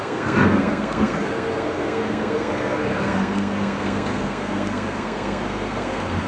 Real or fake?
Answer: fake